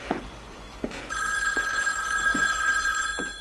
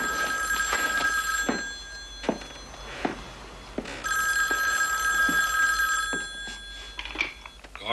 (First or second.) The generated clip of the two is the first